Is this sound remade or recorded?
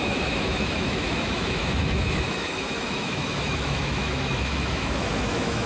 remade